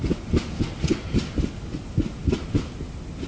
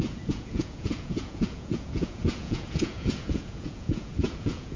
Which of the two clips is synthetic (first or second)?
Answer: second